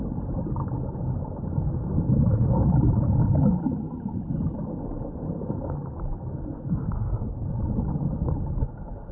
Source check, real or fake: real